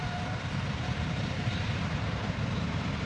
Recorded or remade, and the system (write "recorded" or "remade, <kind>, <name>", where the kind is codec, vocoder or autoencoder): remade, vocoder, BigVGAN v2